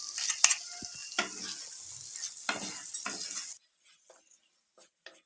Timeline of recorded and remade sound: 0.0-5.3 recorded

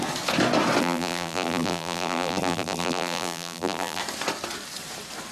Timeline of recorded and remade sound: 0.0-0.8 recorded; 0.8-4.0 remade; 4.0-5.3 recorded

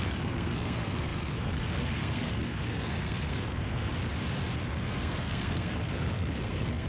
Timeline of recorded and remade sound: 0.0-3.9 remade; 3.9-4.6 recorded; 4.6-6.9 remade

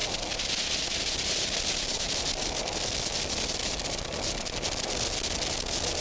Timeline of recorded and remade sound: 0.0-6.0 recorded

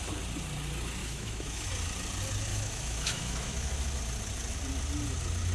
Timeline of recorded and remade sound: 0.0-1.0 recorded; 1.0-1.7 remade; 1.7-2.5 recorded; 2.5-4.0 remade; 4.0-5.5 recorded

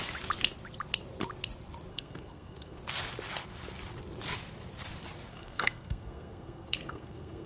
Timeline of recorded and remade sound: 0.0-1.9 recorded; 1.9-2.8 remade; 2.8-5.3 recorded; 5.3-7.5 remade